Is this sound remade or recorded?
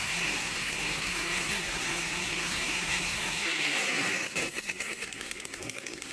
remade